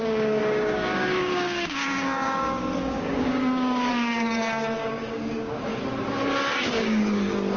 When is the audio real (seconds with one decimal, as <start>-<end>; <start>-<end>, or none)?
5.7-6.6